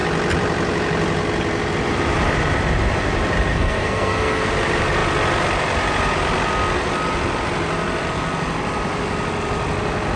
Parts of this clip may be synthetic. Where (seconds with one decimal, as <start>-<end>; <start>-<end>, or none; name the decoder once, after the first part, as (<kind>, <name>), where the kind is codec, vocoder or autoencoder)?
3.5-4.5 (codec, SNAC)